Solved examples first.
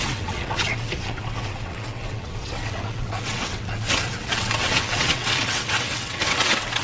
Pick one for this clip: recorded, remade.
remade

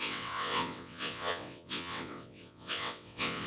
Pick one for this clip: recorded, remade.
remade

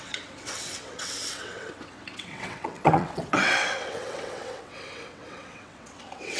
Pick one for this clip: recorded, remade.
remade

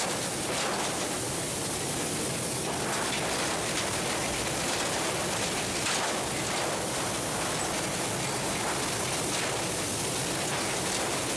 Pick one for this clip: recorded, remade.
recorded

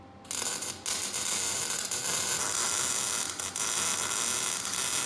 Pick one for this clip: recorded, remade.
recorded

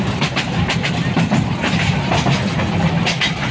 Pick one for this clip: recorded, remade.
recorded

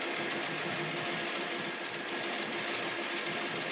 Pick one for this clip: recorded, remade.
recorded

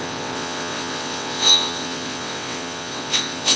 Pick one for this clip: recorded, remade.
remade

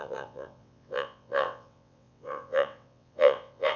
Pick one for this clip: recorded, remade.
remade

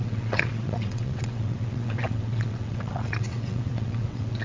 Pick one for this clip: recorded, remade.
remade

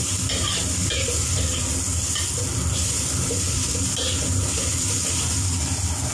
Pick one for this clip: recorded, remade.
recorded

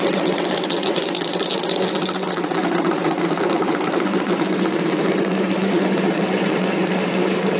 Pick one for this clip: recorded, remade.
remade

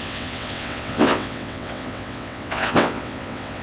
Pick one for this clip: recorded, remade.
remade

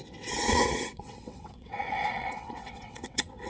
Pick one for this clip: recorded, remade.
remade